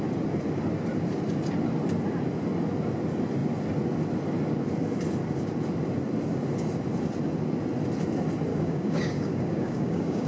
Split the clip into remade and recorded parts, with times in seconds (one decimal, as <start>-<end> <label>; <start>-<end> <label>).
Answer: 0.0-8.5 recorded; 8.5-10.3 remade